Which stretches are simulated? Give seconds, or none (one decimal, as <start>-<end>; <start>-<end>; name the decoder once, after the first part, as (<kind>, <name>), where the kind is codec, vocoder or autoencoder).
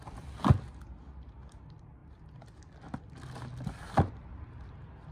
none